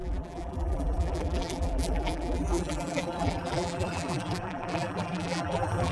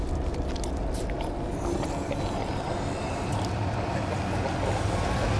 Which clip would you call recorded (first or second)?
second